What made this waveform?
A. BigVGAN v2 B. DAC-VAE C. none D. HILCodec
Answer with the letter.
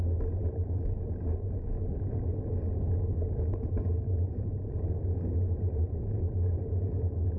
A